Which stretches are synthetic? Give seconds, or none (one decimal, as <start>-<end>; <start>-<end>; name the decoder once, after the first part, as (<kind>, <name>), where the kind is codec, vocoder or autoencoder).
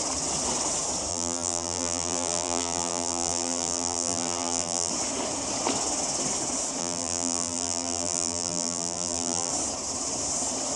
1.1-4.9 (vocoder, BigVGAN v2); 6.8-9.5